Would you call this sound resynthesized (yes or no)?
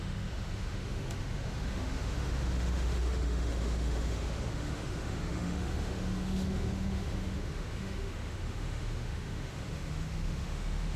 yes